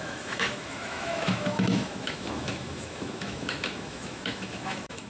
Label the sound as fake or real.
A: fake